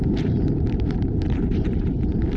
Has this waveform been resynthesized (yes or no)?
yes